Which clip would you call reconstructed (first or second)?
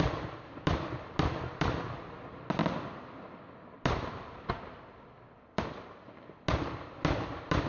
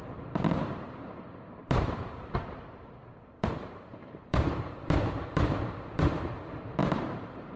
second